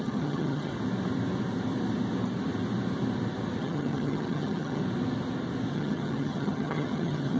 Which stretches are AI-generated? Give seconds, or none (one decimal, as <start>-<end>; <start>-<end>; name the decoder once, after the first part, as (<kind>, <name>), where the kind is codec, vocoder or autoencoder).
0.0-0.7 (vocoder, HiFi-GAN); 3.6-4.8; 5.7-7.4